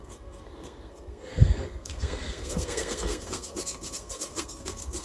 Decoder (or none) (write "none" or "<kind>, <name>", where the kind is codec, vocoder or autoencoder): codec, SNAC